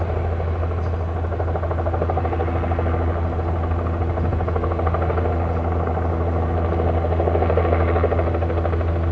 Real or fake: real